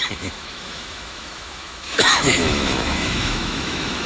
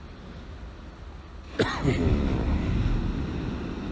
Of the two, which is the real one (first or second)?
second